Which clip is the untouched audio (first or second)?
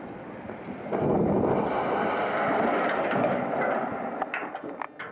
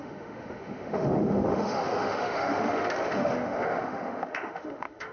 first